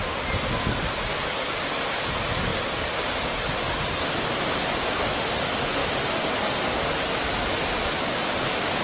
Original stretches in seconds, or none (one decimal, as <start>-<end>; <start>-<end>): 0.0-8.8